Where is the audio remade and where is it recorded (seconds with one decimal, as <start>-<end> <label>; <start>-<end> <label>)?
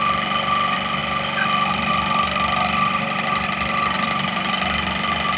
0.0-5.4 recorded